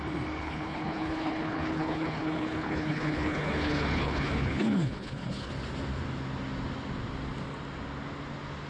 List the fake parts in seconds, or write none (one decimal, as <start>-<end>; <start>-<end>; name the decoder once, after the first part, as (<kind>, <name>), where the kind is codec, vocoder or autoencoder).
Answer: 0.4-5.5 (codec, HILCodec)